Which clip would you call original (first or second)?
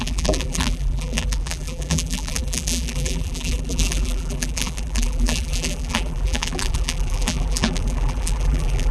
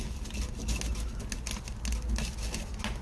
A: second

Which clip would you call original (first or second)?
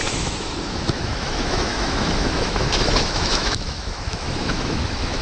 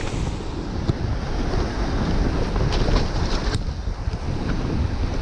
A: second